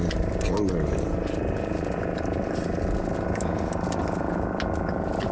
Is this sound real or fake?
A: real